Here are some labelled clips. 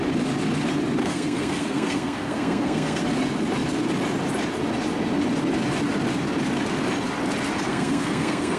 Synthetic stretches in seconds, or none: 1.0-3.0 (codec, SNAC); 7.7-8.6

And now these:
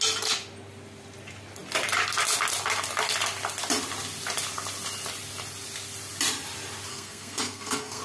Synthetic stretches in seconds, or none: 6.9-8.0 (codec, SNAC)

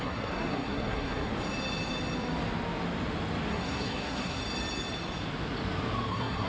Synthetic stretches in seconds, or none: 0.0-1.3 (codec, SNAC); 3.5-4.4; 6.1-6.5

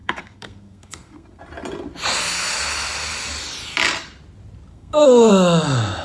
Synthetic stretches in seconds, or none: 0.0-1.4 (codec, SNAC); 4.7-5.3